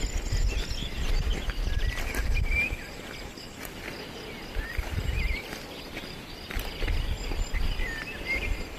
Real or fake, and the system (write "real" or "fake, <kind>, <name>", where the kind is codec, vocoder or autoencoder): fake, vocoder, BigVGAN v2